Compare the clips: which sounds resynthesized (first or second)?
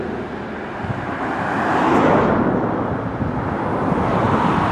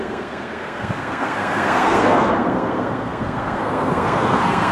second